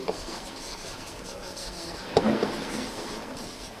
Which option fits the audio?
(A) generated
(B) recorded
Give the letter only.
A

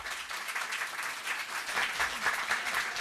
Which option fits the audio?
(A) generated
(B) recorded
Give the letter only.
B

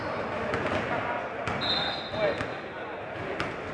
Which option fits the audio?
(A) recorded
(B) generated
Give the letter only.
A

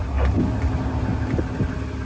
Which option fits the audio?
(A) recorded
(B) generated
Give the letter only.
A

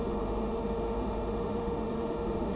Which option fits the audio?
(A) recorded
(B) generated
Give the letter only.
B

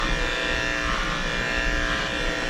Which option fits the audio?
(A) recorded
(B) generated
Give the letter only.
A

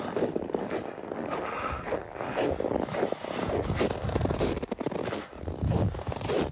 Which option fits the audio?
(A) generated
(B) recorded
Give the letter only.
B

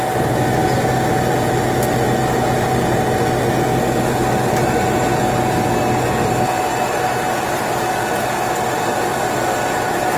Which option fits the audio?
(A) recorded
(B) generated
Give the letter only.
A